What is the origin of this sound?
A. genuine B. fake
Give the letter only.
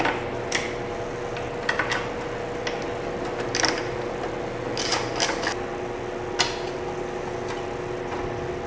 A